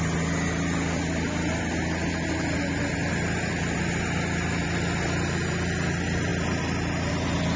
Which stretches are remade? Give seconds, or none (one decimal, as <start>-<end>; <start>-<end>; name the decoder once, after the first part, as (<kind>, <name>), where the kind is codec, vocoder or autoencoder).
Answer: none